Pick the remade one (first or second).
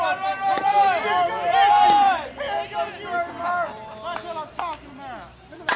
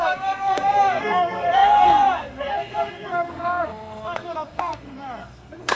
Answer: second